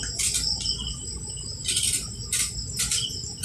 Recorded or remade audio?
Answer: recorded